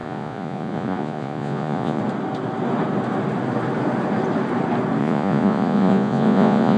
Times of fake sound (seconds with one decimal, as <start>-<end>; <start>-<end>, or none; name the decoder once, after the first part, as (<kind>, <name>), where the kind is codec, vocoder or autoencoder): 0.0-2.0 (vocoder, Vocos); 5.0-6.8